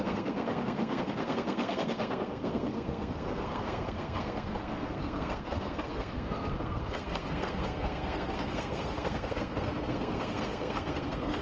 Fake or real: fake